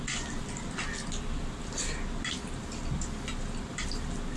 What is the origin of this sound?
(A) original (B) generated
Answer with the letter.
A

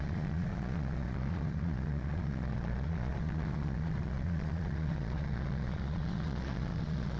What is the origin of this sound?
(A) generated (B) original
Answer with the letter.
A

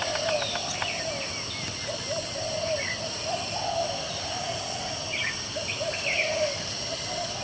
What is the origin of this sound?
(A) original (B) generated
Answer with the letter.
A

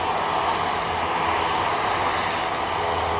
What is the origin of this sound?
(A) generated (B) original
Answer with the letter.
B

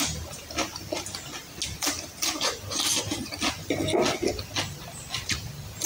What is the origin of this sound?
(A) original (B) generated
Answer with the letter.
A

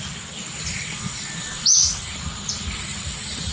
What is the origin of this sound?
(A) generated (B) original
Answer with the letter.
B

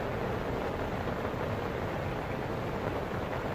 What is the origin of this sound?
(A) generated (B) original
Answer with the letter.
B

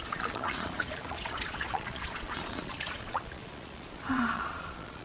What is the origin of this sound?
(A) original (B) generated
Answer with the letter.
B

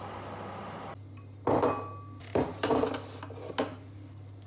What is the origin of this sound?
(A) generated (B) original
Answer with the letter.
B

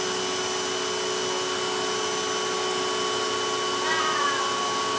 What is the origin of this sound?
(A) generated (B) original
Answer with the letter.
B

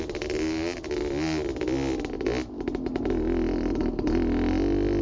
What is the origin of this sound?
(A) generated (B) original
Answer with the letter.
B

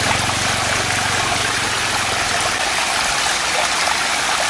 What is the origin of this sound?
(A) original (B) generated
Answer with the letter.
A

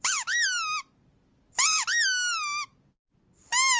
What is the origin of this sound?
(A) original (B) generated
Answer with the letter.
A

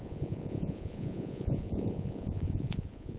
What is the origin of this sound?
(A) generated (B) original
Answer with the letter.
A